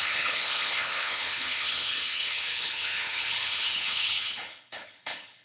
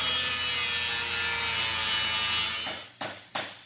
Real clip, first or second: second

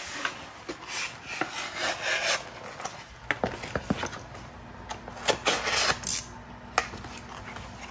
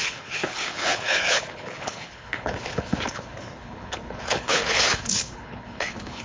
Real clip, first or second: first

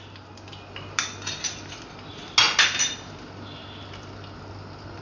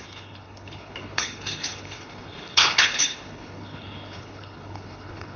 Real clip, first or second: first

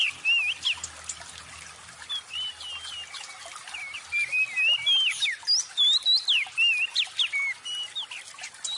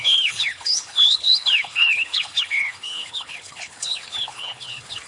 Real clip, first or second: first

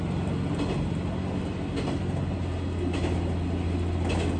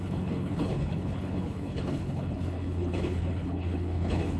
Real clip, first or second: first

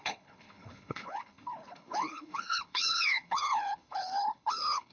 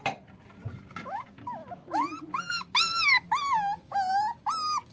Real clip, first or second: second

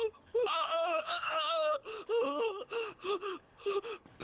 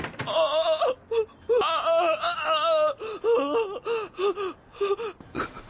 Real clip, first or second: second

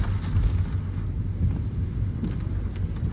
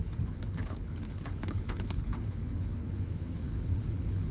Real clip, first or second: first